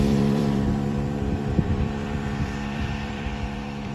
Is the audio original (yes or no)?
no